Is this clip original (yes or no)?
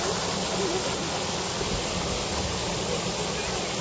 yes